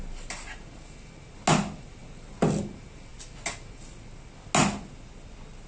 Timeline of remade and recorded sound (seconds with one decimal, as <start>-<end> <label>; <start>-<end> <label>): 0.0-5.7 recorded